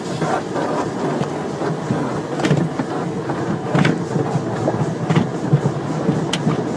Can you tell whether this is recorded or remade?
recorded